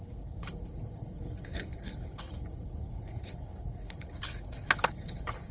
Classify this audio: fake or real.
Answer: fake